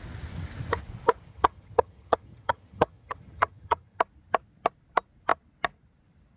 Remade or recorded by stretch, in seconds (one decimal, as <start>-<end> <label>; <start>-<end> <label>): 0.0-1.3 recorded; 1.3-4.0 remade; 4.0-6.4 recorded